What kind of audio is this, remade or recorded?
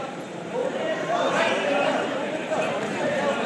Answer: remade